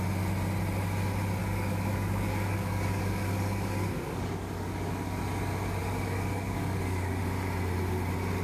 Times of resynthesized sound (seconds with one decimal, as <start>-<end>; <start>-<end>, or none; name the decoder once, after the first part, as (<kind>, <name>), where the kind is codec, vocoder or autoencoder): 1.4-5.2 (codec, DAC); 5.8-7.2